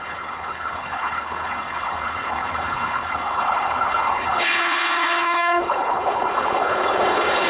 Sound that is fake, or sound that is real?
fake